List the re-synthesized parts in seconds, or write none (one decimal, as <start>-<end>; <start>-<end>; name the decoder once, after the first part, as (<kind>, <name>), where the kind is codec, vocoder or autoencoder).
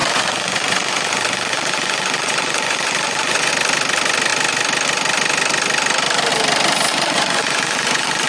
0.0-3.5 (vocoder, Vocos); 6.9-8.3